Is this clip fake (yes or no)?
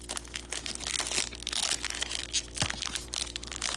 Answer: no